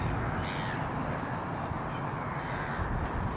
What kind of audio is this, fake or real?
real